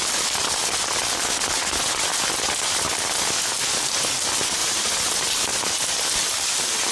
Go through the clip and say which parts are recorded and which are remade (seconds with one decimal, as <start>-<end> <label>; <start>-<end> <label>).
0.0-4.6 recorded; 4.6-5.1 remade; 5.1-6.9 recorded